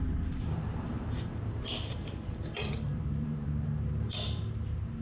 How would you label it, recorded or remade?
remade